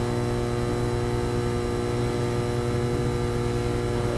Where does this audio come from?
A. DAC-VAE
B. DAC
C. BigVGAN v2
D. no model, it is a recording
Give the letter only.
D